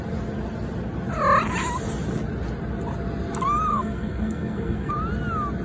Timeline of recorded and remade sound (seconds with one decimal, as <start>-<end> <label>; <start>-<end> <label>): 0.0-3.7 recorded; 3.7-4.9 remade; 4.9-5.6 recorded